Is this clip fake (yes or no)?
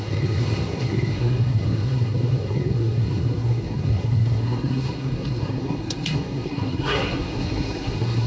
yes